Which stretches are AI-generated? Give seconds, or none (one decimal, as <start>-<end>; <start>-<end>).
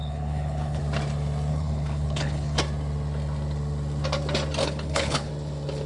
0.0-0.8; 1.5-2.6; 4.6-5.3